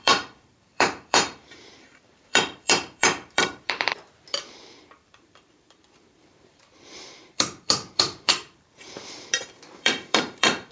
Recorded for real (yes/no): no